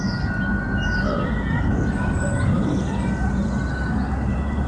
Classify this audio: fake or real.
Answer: real